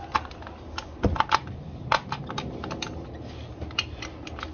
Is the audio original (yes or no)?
yes